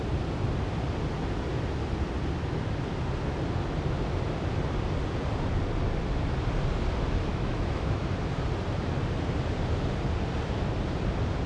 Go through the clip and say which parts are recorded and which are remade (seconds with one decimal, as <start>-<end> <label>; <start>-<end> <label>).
0.0-7.3 recorded; 7.3-8.0 remade; 8.0-11.5 recorded